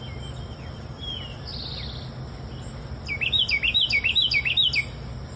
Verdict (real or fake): real